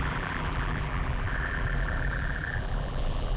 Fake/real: fake